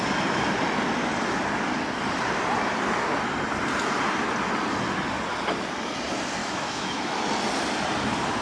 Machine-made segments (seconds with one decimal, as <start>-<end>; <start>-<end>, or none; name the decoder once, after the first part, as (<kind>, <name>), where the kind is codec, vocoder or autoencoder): 6.4-7.2 (autoencoder, DAC-VAE)